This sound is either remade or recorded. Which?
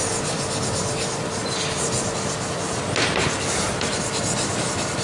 remade